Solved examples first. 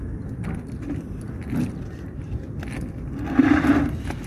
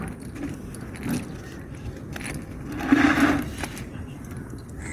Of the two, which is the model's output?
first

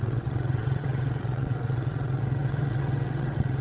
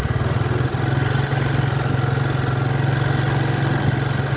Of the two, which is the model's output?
first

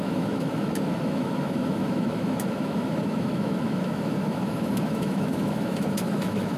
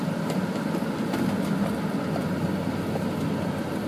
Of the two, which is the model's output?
first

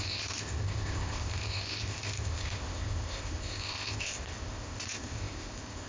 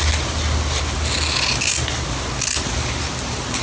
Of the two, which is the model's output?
first